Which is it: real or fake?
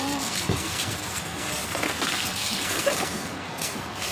fake